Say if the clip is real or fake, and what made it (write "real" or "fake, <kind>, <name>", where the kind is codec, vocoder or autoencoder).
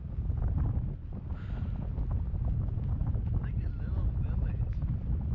real